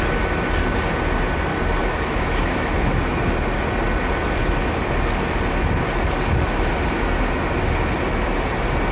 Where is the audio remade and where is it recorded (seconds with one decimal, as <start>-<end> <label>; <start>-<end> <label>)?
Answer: 0.0-1.8 recorded; 1.8-3.2 remade; 3.2-8.9 recorded